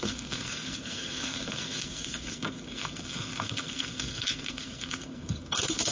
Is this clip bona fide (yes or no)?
no